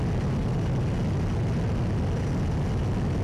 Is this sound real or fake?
real